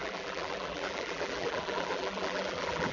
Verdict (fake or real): fake